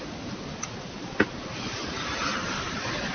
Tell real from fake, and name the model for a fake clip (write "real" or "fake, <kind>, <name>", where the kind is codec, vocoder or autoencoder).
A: real